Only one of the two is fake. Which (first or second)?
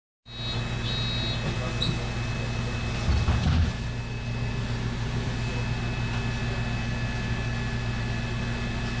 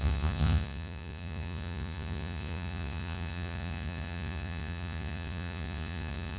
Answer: second